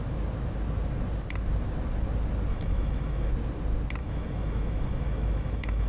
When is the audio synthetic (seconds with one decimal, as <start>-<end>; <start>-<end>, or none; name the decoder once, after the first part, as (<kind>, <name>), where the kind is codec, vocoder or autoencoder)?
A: 2.5-3.3 (autoencoder, DAC-VAE); 4.0-5.9